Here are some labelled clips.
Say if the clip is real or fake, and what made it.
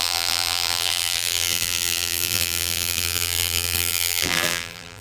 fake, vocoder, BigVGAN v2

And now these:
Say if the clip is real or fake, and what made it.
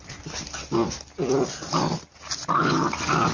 real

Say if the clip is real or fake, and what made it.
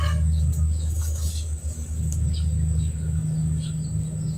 fake, codec, DAC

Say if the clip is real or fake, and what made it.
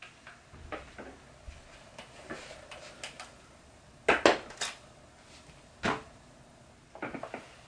real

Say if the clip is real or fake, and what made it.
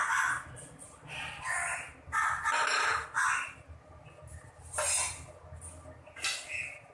real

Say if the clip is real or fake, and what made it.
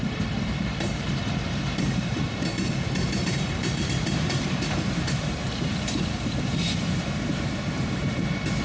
fake, vocoder, BigVGAN v2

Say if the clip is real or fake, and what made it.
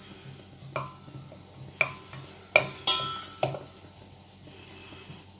real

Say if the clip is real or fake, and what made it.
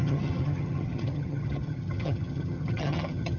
fake, vocoder, HiFi-GAN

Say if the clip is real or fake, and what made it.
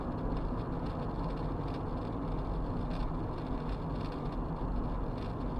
real